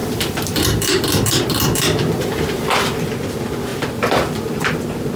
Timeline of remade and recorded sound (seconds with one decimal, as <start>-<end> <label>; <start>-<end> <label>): 0.0-3.1 remade; 3.1-3.7 recorded; 3.7-4.8 remade; 4.8-5.2 recorded